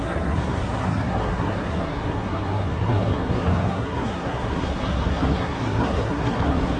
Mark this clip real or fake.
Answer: fake